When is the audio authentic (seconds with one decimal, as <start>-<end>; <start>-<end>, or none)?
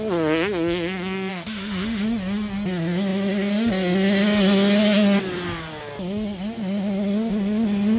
0.0-1.3; 2.0-8.0